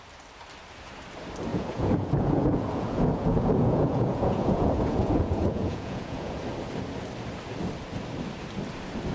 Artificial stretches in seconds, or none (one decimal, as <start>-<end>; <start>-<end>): 1.5-6.4